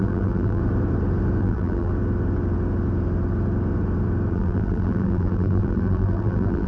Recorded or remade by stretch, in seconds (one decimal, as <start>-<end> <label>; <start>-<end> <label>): 0.0-0.6 remade; 0.6-1.4 recorded; 1.4-1.9 remade; 1.9-4.3 recorded; 4.3-6.7 remade